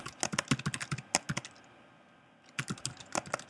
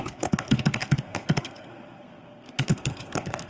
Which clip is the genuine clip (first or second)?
first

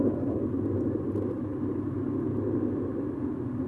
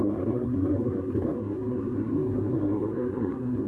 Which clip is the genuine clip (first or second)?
first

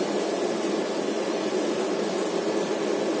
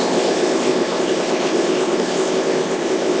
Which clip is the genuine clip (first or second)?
first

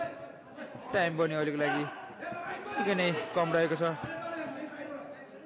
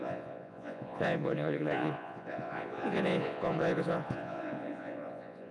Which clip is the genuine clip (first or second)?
first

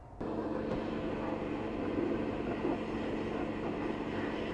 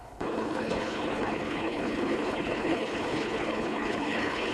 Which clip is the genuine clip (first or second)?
first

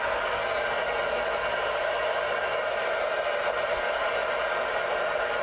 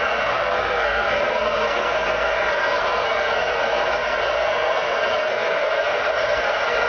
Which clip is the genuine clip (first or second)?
first